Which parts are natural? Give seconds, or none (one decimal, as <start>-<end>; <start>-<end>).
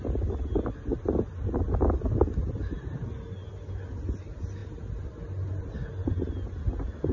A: 0.0-7.1